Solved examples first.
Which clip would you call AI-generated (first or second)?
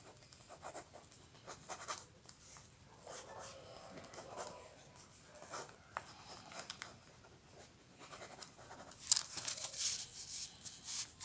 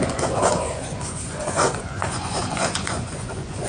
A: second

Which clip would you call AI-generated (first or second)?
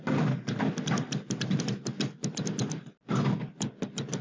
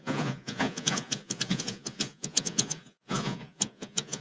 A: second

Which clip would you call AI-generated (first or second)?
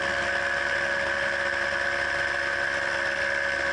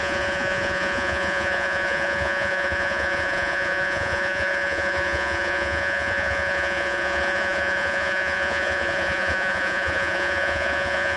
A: second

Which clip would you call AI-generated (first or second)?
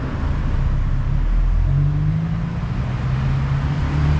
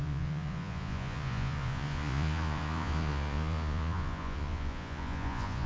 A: second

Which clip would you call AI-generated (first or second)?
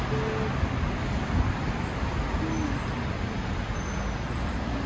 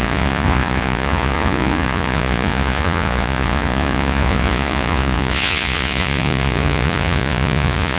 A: second